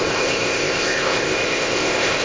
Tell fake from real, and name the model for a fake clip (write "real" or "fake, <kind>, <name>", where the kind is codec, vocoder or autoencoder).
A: fake, codec, ZipCodec